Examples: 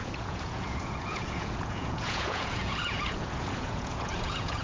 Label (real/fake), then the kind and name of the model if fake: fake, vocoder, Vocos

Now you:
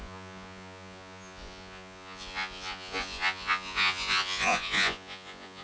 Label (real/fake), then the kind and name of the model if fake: fake, vocoder, Vocos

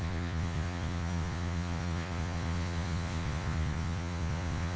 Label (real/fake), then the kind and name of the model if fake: fake, vocoder, Vocos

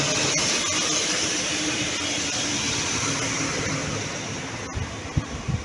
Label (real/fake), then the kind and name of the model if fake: real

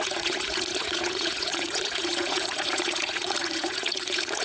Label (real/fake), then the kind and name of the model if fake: fake, vocoder, Vocos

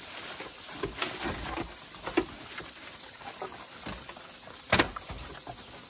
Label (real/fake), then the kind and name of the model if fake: real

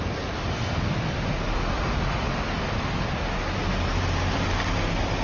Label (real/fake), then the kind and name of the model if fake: real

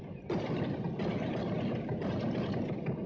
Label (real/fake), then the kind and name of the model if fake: real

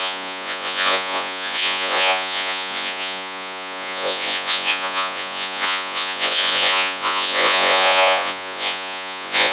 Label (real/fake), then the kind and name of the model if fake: fake, vocoder, Vocos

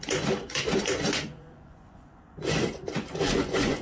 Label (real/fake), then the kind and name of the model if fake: fake, vocoder, Vocos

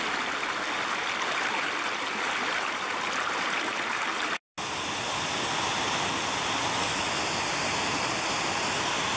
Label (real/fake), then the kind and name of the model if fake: real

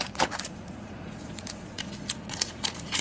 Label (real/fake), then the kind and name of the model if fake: fake, vocoder, Vocos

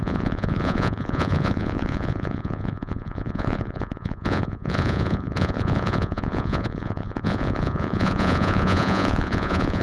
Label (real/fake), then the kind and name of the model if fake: fake, vocoder, Vocos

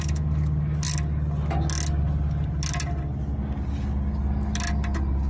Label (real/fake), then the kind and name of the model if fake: real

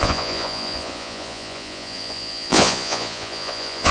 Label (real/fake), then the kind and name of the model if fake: fake, vocoder, Vocos